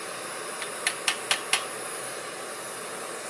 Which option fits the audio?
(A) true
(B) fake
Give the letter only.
A